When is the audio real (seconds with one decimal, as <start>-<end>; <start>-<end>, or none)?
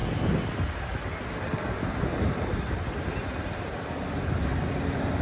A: 0.0-5.2